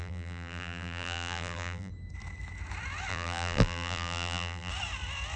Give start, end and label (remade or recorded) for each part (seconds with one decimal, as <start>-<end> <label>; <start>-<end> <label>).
0.0-1.9 remade; 1.9-3.1 recorded; 3.1-4.7 remade; 4.7-5.4 recorded